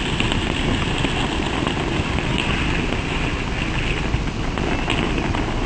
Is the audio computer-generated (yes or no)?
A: no